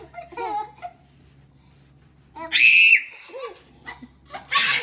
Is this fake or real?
real